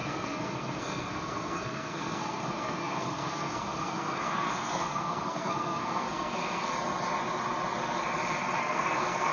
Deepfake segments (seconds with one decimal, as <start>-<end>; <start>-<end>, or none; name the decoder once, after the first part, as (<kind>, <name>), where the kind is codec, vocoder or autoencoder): 0.0-6.7 (codec, SNAC); 8.6-9.3